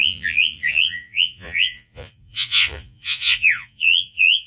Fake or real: fake